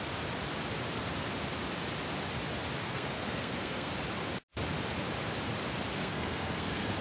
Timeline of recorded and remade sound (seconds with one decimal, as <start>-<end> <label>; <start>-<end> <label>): 0.0-2.8 recorded; 2.8-3.9 remade; 3.9-6.0 recorded; 6.0-7.0 remade